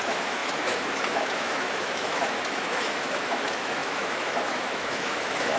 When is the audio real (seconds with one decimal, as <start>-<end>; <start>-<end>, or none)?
none